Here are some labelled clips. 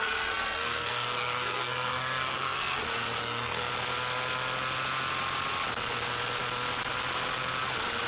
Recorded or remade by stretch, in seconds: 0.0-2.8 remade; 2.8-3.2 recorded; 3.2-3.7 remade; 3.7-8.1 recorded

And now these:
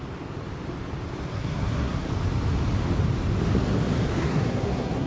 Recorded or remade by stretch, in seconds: 0.0-1.3 recorded; 1.3-2.1 remade; 2.1-4.1 recorded; 4.1-5.1 remade

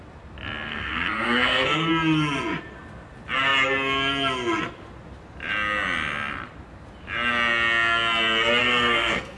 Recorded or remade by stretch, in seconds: 0.0-0.7 recorded; 0.7-1.9 remade; 1.9-8.6 recorded; 8.6-9.4 remade

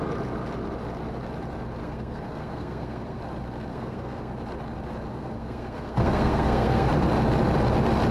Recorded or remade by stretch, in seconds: 0.0-1.8 recorded; 1.8-3.2 remade; 3.2-3.7 recorded; 3.7-4.3 remade; 4.3-5.1 recorded; 5.1-6.9 remade; 6.9-8.1 recorded

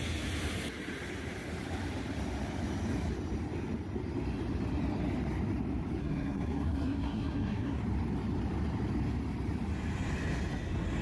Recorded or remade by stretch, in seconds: 0.0-6.0 recorded; 6.0-7.8 remade; 7.8-11.0 recorded

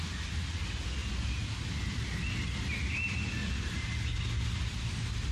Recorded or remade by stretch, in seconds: 0.0-5.3 recorded